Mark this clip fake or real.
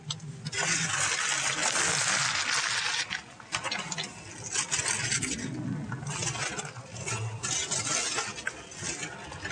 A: real